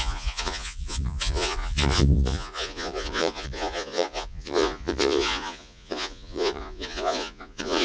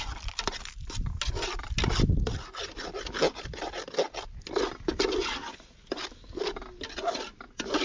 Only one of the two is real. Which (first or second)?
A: second